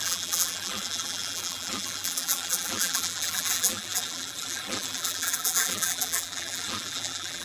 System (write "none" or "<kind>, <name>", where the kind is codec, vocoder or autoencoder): vocoder, BigVGAN v2